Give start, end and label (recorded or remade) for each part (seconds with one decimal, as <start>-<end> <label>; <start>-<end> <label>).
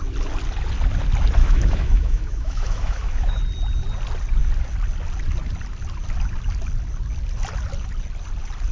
0.0-1.4 recorded; 1.4-3.4 remade; 3.4-8.7 recorded